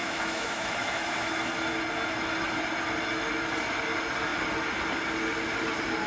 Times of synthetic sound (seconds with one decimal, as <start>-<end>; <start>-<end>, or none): 0.0-1.5